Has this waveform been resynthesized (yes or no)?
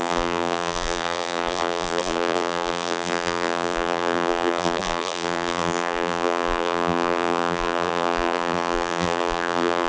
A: yes